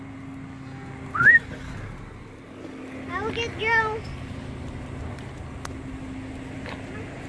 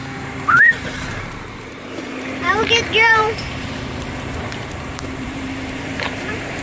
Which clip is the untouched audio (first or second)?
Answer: first